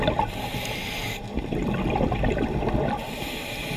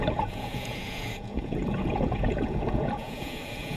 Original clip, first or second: first